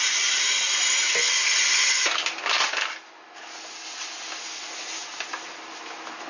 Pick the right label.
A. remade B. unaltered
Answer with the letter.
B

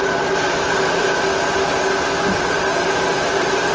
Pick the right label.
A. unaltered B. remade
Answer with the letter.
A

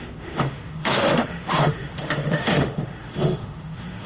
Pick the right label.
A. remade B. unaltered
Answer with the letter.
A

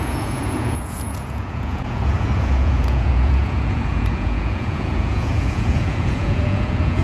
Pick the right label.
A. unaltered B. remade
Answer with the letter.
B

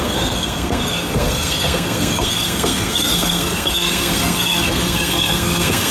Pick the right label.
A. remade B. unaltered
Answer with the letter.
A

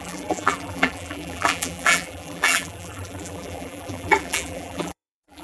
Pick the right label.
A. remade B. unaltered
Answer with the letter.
A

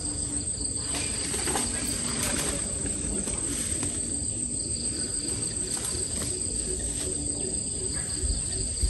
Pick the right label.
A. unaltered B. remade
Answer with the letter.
A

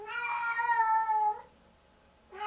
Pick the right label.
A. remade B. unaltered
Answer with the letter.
B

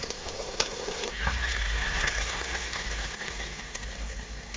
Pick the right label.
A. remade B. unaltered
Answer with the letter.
A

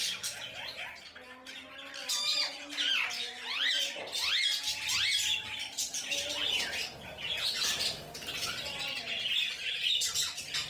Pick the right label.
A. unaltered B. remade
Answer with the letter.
A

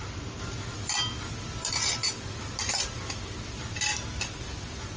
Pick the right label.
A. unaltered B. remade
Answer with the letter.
A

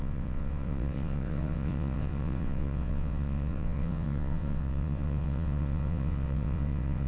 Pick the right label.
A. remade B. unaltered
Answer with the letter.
A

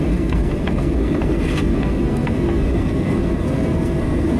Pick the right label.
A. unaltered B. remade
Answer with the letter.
B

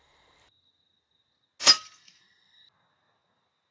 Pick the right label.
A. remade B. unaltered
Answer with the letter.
B